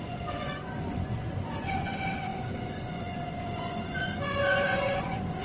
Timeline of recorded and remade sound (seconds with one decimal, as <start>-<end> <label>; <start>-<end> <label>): 0.0-5.4 remade